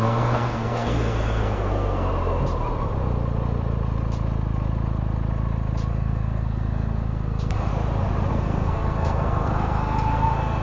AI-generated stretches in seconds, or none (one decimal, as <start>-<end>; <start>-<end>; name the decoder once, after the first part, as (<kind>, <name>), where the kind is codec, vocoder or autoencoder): 0.0-2.1 (codec, SNAC); 5.9-7.7; 8.3-10.6